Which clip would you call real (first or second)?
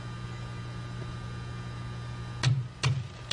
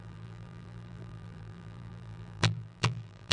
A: first